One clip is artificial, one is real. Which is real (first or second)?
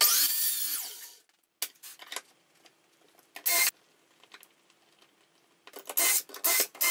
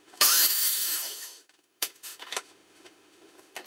first